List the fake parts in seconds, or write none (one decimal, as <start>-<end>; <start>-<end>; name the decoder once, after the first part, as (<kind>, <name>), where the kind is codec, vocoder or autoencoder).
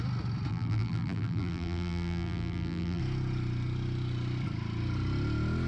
0.5-3.0 (vocoder, BigVGAN v2)